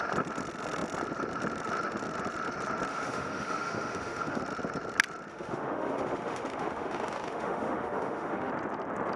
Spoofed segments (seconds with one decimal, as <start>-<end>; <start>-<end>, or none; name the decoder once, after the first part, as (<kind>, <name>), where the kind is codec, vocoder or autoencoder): 2.9-4.4 (autoencoder, DAC-VAE); 5.3-8.5